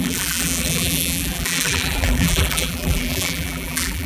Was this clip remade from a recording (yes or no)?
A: yes